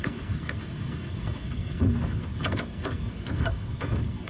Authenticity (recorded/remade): remade